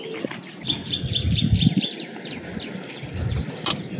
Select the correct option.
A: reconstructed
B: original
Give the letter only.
B